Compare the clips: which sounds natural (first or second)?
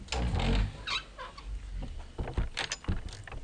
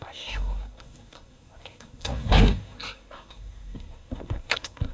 first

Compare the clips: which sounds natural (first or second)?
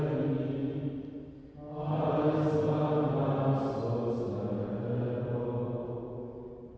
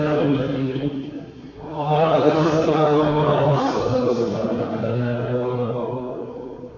first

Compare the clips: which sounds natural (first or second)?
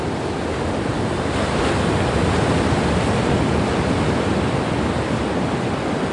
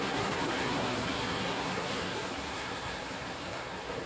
first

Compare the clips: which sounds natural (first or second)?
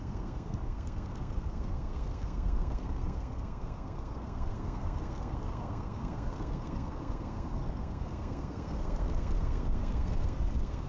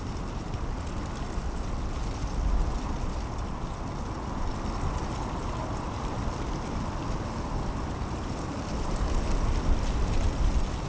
second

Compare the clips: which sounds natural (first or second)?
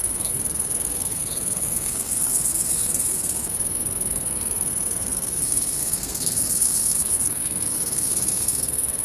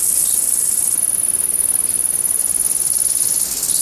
second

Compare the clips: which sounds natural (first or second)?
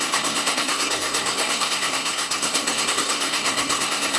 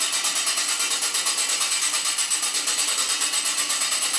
second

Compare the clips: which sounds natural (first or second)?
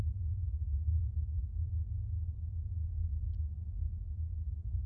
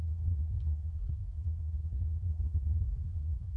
first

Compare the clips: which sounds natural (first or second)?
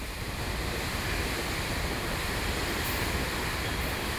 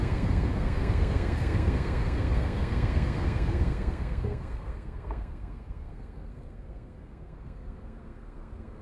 first